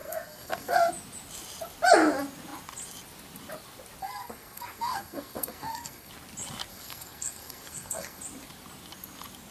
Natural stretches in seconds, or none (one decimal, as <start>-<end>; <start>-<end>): 0.9-4.0; 6.1-6.7; 8.2-9.5